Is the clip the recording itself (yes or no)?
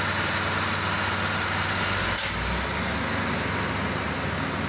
yes